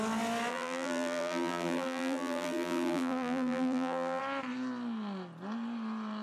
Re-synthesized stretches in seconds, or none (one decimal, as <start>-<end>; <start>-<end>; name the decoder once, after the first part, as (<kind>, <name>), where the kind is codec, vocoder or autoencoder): 0.5-4.2 (vocoder, BigVGAN v2)